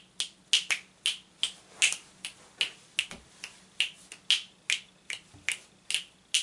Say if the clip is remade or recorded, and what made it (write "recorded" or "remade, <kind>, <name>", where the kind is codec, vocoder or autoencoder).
recorded